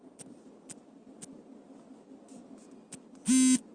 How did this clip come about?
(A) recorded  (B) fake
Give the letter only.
A